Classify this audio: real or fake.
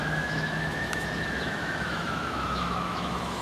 fake